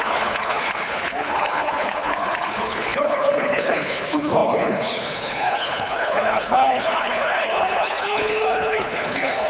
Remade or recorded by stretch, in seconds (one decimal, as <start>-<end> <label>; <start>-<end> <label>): 0.0-9.5 remade